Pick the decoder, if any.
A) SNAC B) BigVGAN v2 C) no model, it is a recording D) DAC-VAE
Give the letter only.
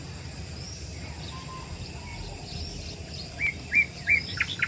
C